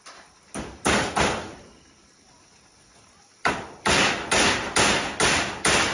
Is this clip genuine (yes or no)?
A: yes